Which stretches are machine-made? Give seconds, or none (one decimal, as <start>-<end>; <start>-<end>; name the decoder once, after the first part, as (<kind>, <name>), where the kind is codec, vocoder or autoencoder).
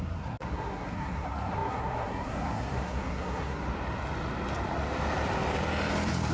0.0-3.6 (codec, SNAC)